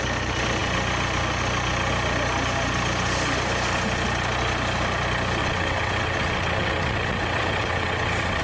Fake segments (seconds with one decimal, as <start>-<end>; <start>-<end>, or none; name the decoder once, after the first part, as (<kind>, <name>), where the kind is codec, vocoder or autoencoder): 5.4-8.4 (vocoder, WaveNeXt)